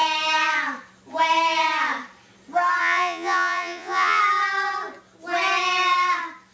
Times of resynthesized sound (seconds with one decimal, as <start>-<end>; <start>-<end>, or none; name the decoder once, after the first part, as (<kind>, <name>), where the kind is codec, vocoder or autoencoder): 2.8-4.2 (vocoder, Vocos)